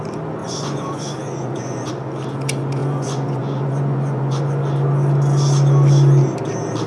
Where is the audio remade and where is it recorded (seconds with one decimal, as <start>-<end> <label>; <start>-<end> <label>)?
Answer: 0.0-0.4 recorded; 0.4-1.9 remade; 1.9-2.8 recorded; 2.8-4.4 remade; 4.4-6.9 recorded